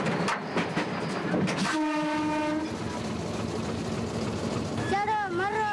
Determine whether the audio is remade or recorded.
recorded